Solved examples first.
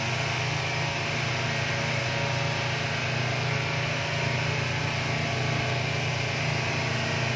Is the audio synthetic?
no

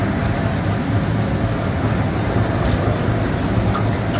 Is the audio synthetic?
no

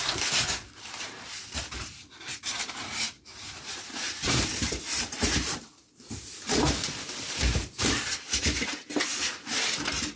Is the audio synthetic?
yes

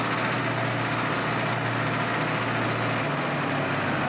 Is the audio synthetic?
no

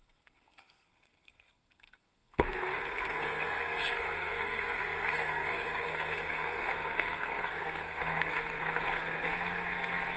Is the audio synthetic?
yes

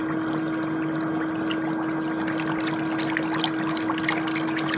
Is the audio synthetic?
no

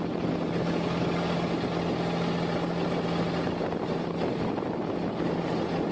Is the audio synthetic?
no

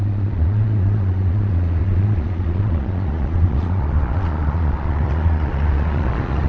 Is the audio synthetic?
yes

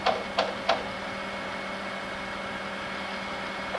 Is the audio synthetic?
no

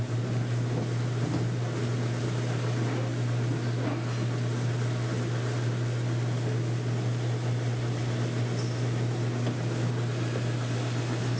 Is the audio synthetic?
no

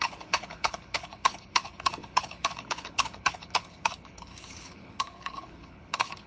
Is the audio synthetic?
yes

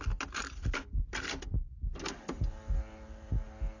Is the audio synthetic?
no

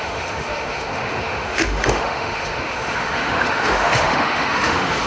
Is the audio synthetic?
yes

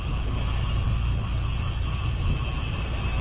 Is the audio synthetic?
no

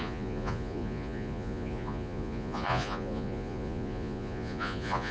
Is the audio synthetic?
yes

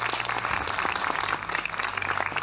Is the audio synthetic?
no